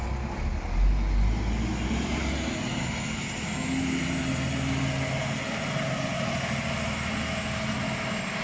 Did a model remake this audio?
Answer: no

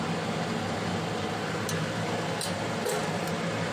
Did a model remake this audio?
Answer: no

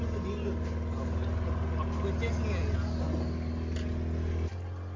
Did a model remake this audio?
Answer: no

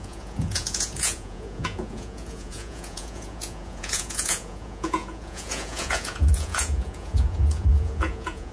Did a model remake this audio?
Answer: yes